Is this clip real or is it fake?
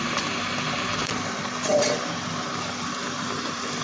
fake